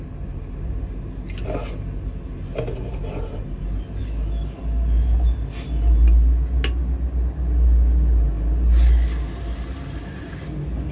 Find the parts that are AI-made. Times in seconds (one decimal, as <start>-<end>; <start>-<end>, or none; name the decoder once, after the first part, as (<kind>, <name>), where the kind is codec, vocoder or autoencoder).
4.0-4.6 (autoencoder, DAC-VAE)